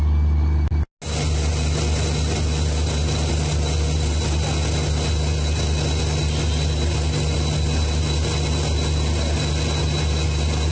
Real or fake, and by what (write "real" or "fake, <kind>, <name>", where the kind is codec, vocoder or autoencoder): real